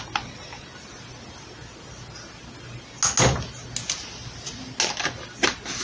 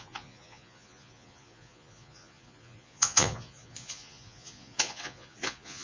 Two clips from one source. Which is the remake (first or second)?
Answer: second